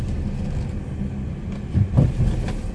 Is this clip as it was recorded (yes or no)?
yes